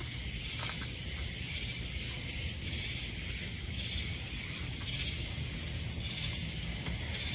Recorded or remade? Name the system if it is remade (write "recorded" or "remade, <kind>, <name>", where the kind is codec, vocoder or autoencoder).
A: recorded